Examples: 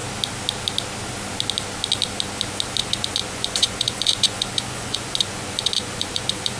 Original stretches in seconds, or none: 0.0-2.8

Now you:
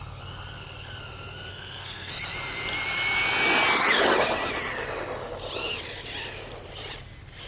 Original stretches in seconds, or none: 0.0-1.5; 2.1-7.5